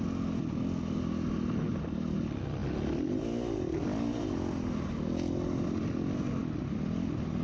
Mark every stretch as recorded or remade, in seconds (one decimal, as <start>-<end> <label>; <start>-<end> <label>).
0.0-7.4 recorded